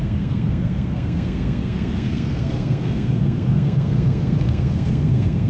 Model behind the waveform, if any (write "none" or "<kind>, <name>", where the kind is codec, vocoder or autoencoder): codec, SNAC